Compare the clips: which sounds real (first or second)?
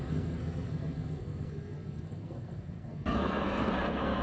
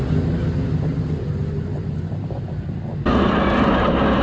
second